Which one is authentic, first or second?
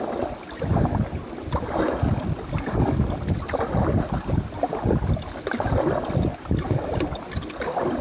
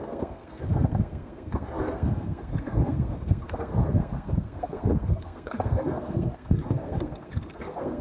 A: first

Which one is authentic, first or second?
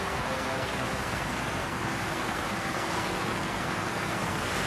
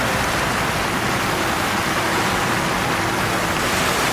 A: second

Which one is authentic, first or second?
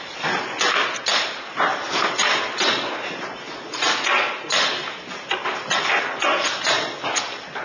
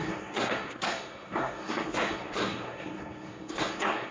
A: first